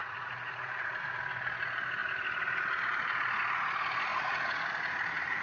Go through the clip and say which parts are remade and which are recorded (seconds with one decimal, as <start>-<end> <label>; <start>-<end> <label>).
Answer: 0.0-1.2 remade; 1.2-4.1 recorded; 4.1-4.7 remade; 4.7-5.4 recorded